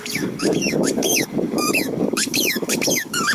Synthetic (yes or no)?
yes